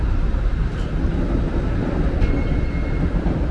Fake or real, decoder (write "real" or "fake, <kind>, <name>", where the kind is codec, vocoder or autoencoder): real